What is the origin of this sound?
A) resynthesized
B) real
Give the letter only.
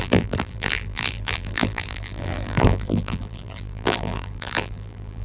A